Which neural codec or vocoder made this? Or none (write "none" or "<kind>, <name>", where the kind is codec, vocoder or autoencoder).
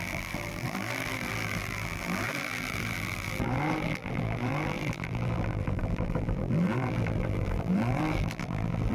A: vocoder, BigVGAN v2